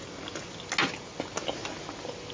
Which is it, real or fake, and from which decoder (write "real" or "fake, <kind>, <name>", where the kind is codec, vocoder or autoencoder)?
real